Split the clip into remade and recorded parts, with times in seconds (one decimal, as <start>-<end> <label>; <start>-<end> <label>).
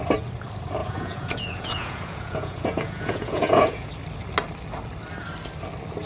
0.0-0.8 recorded; 0.8-3.9 remade; 3.9-6.1 recorded